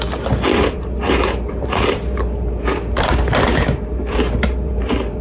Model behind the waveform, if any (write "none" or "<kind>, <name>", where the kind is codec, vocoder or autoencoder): vocoder, BigVGAN v2